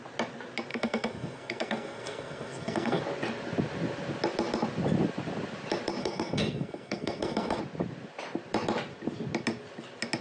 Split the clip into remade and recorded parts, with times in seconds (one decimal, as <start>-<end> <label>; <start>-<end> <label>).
0.0-0.7 recorded; 0.7-3.0 remade; 3.0-6.0 recorded; 6.0-7.6 remade; 7.6-10.2 recorded